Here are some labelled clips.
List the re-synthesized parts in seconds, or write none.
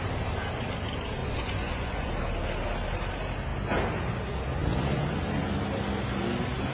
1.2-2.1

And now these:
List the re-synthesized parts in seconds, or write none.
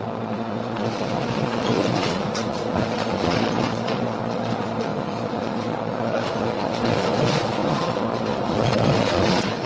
0.0-9.7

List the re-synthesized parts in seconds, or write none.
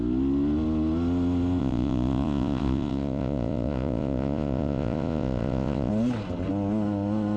1.6-5.9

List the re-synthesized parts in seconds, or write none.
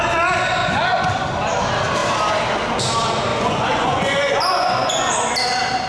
0.6-1.1; 3.3-5.1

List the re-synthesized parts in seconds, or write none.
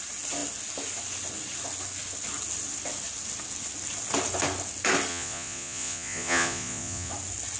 5.1-7.1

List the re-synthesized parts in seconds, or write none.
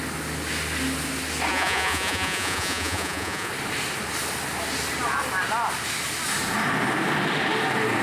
1.5-3.5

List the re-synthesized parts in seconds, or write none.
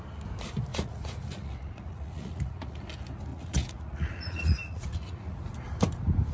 0.7-2.8; 3.3-5.4